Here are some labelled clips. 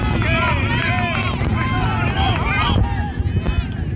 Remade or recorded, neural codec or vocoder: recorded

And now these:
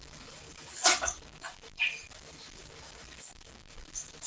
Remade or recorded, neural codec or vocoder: remade, codec, DAC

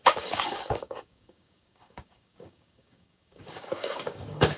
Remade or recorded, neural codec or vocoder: remade, codec, DAC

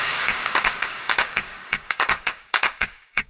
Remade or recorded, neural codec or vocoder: remade, codec, DAC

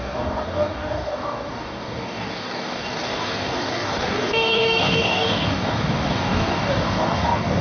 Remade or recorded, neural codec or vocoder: remade, codec, DAC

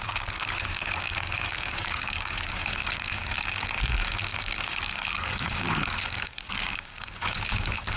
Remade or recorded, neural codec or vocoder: remade, codec, DAC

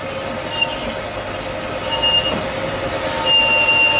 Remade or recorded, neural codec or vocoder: recorded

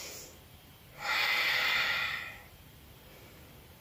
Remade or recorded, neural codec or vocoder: recorded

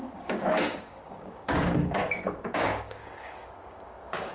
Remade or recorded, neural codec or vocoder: remade, codec, DAC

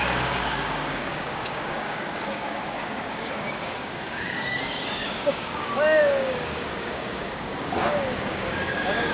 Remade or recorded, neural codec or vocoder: remade, codec, DAC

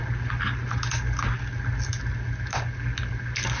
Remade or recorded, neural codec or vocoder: recorded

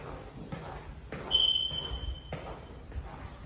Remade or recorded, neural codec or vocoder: recorded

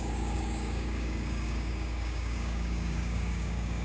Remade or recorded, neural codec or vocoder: remade, codec, DAC